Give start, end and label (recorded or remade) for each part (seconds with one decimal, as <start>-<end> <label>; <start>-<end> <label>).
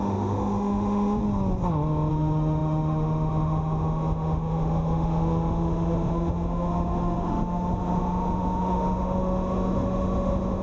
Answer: 0.0-1.2 remade; 1.2-2.1 recorded; 2.1-10.6 remade